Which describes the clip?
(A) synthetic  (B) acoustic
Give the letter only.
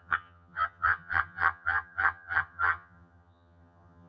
A